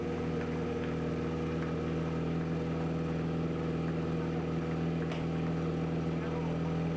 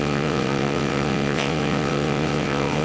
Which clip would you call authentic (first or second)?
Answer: first